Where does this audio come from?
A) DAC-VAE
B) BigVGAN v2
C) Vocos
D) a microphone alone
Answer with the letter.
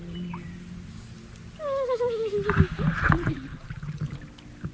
D